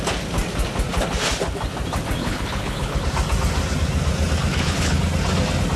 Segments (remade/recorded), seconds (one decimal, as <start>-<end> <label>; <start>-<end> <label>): 0.0-2.2 recorded; 2.2-3.0 remade; 3.0-4.5 recorded; 4.5-5.0 remade; 5.0-5.8 recorded